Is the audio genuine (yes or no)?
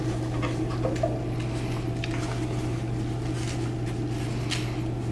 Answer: yes